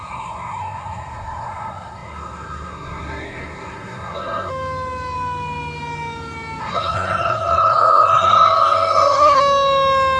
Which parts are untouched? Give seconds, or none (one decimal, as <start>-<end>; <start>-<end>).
4.5-6.6; 9.4-10.2